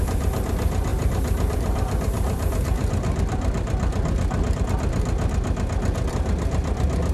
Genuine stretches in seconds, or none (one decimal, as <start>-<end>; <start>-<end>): 0.0-0.9; 4.6-7.1